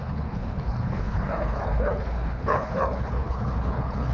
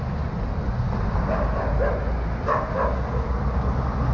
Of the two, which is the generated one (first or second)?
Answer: first